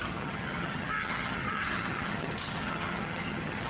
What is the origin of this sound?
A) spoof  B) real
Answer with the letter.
A